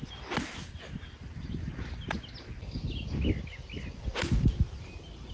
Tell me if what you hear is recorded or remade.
recorded